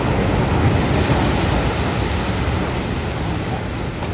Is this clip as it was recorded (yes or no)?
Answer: yes